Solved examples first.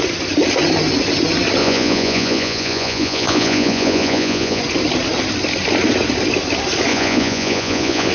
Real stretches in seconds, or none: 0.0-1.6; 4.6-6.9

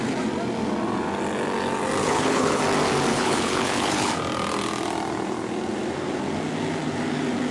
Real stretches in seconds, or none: 0.0-2.0; 2.6-3.1; 4.1-7.5